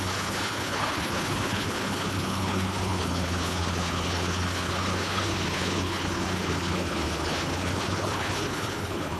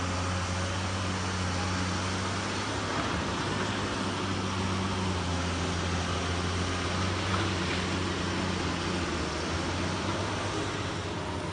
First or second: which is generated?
first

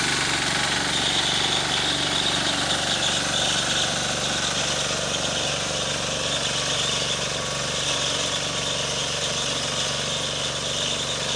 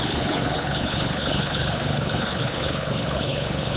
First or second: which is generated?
second